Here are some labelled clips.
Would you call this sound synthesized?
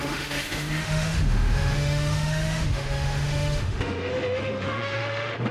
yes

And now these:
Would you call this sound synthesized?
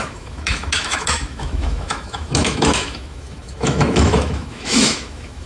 yes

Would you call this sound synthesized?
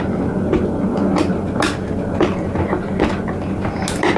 no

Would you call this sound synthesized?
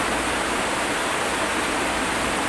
no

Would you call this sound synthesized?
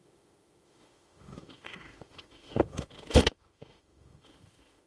yes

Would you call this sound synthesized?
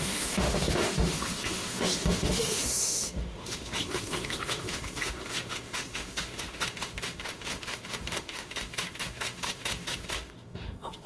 yes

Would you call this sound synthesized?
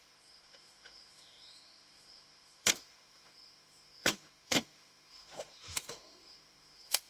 yes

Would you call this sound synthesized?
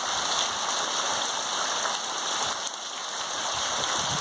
no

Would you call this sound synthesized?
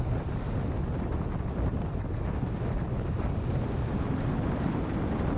no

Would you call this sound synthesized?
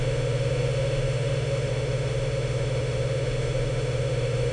yes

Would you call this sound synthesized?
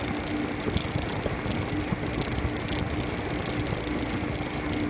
no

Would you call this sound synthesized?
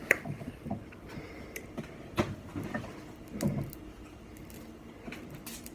no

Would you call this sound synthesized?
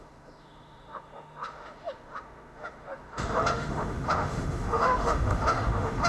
yes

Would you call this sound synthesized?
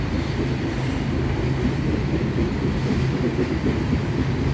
no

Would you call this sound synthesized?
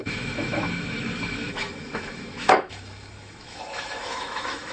yes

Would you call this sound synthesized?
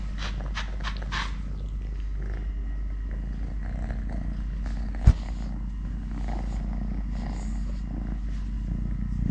no